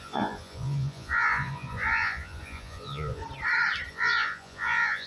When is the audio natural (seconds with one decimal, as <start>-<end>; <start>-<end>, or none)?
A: 3.2-3.9